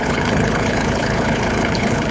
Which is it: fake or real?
fake